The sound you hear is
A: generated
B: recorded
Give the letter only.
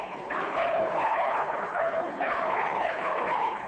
A